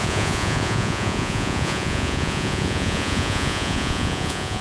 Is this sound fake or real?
fake